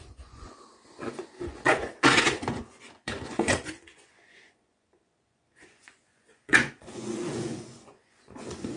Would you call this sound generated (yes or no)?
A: yes